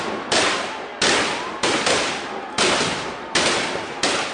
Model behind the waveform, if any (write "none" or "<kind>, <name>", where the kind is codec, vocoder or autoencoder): none